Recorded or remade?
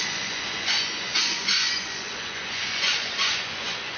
remade